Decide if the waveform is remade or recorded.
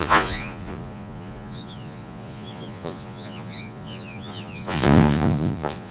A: remade